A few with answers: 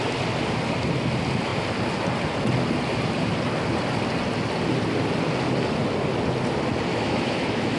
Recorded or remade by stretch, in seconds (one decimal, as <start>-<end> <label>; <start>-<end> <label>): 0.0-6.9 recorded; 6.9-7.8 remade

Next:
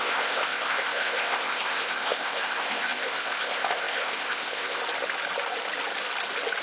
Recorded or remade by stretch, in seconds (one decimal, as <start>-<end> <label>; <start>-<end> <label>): 0.0-4.8 remade; 4.8-6.6 recorded

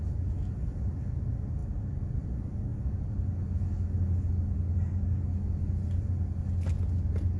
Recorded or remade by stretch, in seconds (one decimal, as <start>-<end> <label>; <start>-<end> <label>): 0.0-7.4 recorded

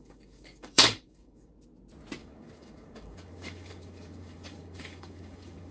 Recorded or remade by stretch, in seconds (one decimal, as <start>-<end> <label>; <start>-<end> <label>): 0.0-1.5 remade; 1.5-2.2 recorded; 2.2-5.7 remade

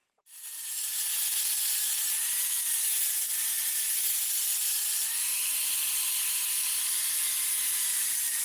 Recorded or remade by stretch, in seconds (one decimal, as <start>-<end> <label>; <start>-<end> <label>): 0.0-6.6 remade; 6.6-7.8 recorded; 7.8-8.4 remade

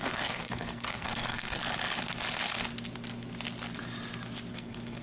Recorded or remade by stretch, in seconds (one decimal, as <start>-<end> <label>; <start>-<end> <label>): 0.0-1.6 remade; 1.6-4.5 recorded; 4.5-5.0 remade

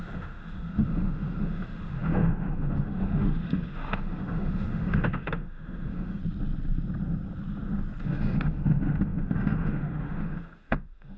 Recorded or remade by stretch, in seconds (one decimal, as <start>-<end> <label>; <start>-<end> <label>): 0.0-6.2 remade; 6.2-8.0 recorded; 8.0-11.2 remade

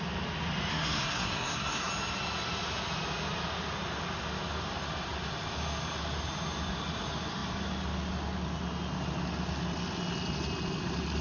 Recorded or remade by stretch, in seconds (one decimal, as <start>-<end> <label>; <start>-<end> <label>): 0.0-0.7 recorded; 0.7-1.9 remade; 1.9-11.2 recorded